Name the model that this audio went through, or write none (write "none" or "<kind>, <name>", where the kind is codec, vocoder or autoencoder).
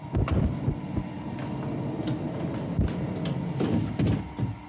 none